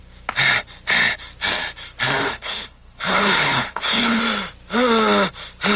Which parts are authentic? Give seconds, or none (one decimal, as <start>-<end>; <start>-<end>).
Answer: 0.0-2.2; 4.2-5.8

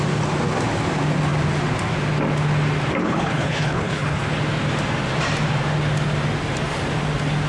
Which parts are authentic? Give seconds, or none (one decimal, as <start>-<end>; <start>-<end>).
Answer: 0.0-3.0; 4.2-7.5

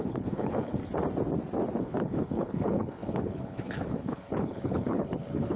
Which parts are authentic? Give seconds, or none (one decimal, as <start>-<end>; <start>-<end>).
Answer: 0.8-1.8

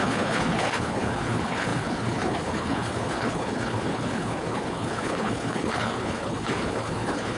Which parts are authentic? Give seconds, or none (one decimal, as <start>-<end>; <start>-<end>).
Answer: none

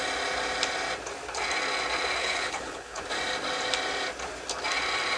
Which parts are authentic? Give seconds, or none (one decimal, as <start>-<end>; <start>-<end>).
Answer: 0.0-2.2; 3.0-5.2

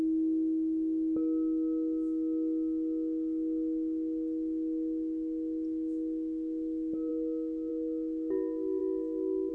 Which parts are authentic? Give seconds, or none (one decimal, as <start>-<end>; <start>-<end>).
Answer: 0.0-9.5

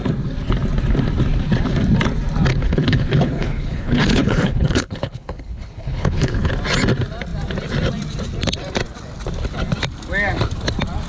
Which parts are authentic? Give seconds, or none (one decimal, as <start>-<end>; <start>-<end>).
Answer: 0.0-2.5; 6.5-11.1